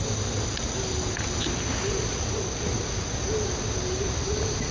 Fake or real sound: real